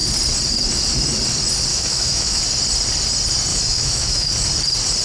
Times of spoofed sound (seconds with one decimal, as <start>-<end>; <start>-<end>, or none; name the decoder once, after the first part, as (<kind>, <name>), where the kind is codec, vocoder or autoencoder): 1.7-2.4 (autoencoder, DAC-VAE); 3.5-4.3